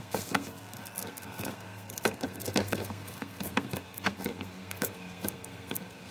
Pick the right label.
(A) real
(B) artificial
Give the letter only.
B